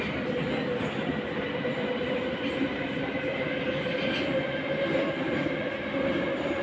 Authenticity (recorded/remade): recorded